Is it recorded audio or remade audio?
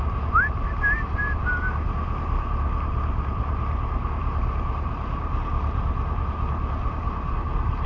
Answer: recorded